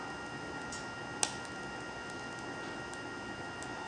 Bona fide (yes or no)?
yes